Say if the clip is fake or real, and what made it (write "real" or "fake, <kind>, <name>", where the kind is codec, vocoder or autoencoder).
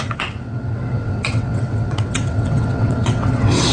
fake, vocoder, WaveNeXt